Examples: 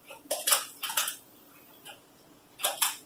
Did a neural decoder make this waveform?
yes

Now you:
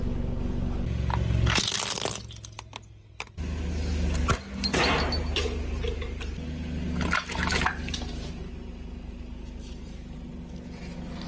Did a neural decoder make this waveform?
no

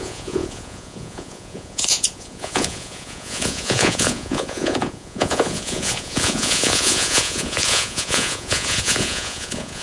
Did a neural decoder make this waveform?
yes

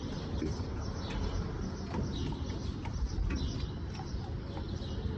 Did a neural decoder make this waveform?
no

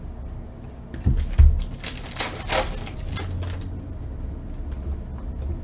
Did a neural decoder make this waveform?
no